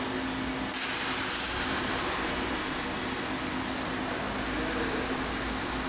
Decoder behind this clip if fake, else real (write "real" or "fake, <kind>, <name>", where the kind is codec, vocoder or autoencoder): real